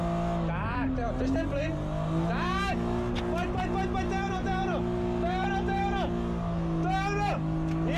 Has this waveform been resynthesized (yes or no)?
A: no